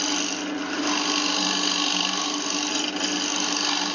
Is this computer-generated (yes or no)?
no